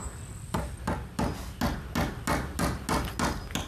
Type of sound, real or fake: real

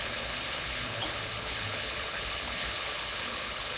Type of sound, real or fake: fake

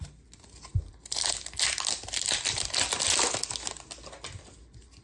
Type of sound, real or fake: real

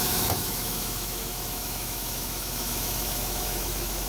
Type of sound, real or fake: fake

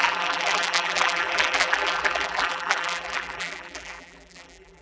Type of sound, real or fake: fake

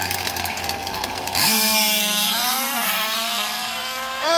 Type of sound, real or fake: fake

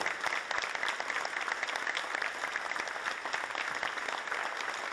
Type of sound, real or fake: real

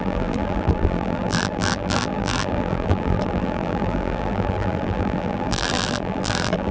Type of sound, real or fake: fake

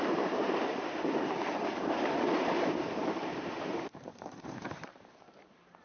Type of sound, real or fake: fake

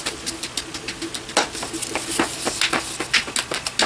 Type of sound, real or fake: real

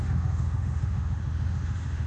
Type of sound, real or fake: fake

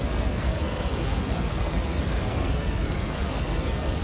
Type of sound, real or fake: fake